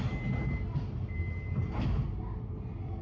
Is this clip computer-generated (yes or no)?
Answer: no